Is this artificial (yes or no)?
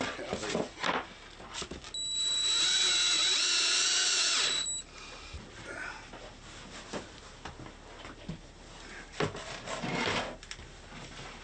no